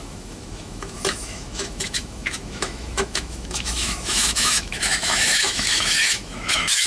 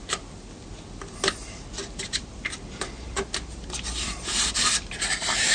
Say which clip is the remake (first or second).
first